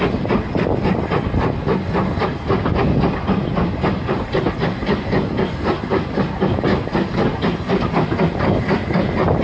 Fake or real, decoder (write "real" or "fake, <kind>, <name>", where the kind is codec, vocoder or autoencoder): real